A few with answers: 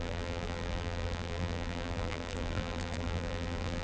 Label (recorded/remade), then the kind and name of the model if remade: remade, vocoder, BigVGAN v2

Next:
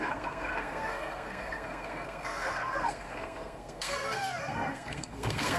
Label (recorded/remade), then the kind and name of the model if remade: remade, codec, SNAC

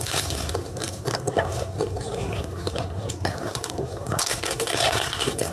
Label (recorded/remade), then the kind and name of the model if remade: remade, codec, SNAC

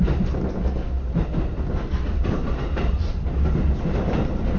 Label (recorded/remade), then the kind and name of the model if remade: recorded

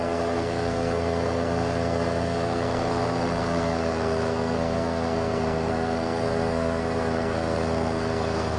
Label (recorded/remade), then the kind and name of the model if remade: remade, codec, SNAC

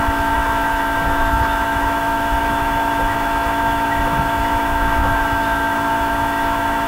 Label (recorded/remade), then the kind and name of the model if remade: remade, autoencoder, DAC-VAE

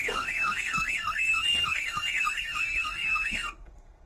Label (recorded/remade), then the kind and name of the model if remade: remade, codec, SNAC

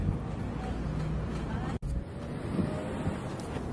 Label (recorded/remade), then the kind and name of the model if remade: recorded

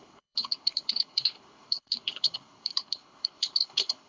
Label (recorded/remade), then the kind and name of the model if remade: remade, codec, HILCodec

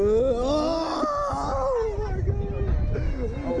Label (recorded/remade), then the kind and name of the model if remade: recorded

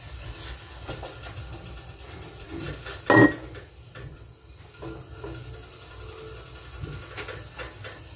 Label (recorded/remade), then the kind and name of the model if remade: recorded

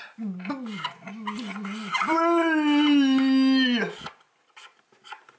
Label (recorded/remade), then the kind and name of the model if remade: recorded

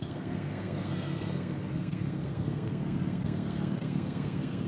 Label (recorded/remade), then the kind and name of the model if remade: remade, codec, SNAC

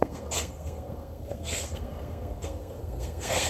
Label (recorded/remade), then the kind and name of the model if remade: remade, codec, SNAC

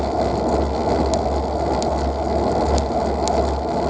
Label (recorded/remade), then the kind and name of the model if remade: recorded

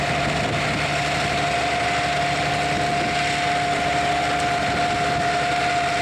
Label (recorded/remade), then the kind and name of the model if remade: recorded